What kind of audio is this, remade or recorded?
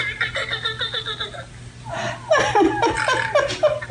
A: recorded